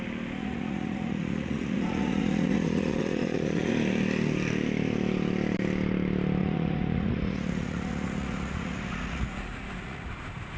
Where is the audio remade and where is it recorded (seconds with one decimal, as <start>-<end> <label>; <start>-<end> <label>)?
0.0-0.4 recorded; 0.4-3.7 remade; 3.7-6.4 recorded; 6.4-10.1 remade; 10.1-10.6 recorded